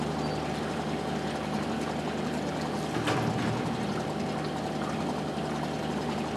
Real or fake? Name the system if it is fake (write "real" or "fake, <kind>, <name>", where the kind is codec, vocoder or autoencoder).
real